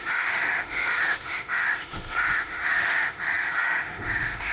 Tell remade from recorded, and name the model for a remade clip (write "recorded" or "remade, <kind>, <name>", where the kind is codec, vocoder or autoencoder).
remade, autoencoder, DAC-VAE